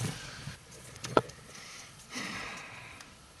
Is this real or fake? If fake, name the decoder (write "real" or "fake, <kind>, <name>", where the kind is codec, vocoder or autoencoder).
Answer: fake, vocoder, Vocos